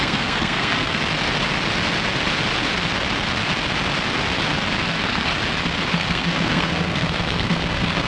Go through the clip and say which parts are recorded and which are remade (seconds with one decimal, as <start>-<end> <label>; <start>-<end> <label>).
0.0-1.0 remade; 1.0-4.8 recorded; 4.8-5.3 remade; 5.3-5.9 recorded; 5.9-8.1 remade